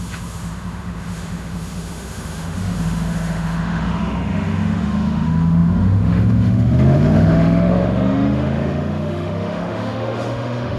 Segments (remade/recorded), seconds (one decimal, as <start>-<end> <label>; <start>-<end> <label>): 0.0-10.8 remade